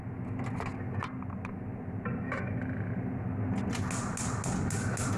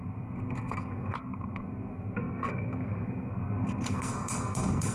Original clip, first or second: first